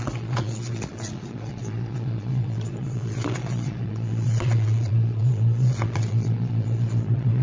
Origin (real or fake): fake